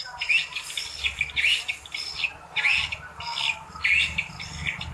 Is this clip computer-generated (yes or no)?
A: no